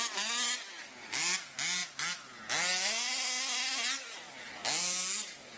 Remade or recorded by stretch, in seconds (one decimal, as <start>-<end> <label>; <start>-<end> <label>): 0.0-5.6 recorded